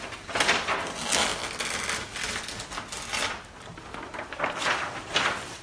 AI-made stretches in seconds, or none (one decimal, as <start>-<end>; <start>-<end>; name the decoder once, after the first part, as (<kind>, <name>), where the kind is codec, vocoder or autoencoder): none